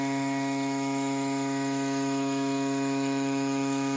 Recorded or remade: remade